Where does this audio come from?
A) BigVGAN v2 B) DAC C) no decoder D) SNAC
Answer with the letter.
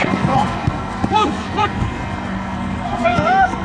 D